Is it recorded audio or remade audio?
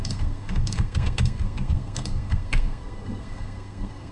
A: remade